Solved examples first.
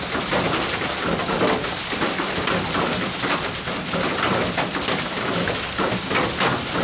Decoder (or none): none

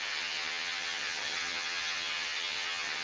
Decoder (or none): vocoder, HiFi-GAN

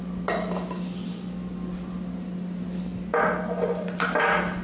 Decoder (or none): none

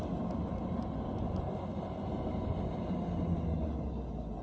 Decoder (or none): none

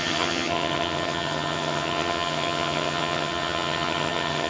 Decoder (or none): vocoder, HiFi-GAN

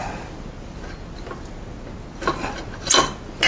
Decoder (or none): none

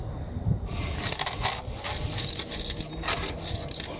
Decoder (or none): none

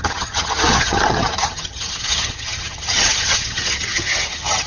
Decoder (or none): vocoder, HiFi-GAN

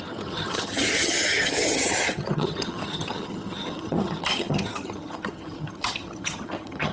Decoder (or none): vocoder, HiFi-GAN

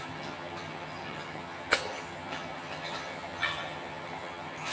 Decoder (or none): vocoder, HiFi-GAN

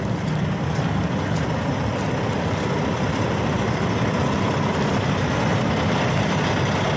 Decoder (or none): none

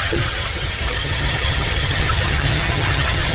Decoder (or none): vocoder, HiFi-GAN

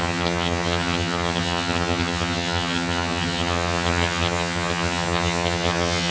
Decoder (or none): vocoder, HiFi-GAN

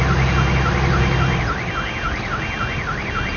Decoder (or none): none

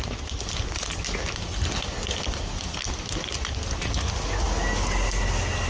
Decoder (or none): none